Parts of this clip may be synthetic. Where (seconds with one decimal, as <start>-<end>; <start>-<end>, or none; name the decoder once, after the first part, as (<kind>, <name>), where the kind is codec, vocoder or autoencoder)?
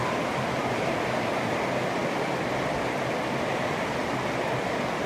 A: none